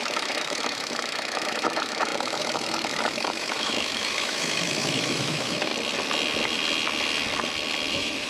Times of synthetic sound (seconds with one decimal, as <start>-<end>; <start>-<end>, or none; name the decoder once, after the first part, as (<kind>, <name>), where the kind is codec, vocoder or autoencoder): 0.0-5.7 (autoencoder, DAC-VAE); 7.9-8.3